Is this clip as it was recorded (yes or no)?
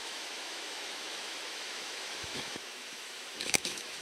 no